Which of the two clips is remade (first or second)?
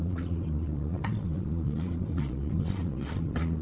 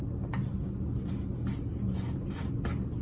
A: first